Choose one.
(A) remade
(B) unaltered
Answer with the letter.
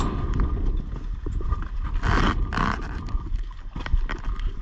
B